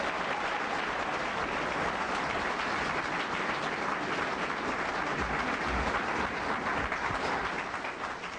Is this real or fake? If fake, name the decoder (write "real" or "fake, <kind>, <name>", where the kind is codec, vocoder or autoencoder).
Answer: real